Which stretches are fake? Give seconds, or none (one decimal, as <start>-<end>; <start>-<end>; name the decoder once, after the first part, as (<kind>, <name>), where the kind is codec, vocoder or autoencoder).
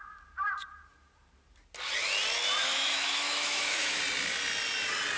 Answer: 2.6-4.0 (autoencoder, DAC-VAE)